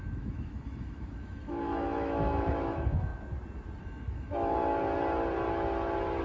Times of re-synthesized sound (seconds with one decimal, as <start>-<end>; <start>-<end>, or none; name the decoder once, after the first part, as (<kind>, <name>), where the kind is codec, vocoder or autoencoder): 0.0-3.1 (autoencoder, DAC-VAE); 3.8-4.6